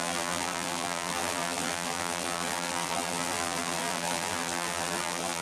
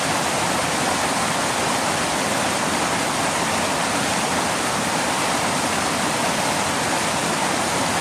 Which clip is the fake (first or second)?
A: first